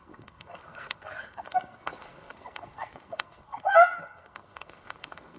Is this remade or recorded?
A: remade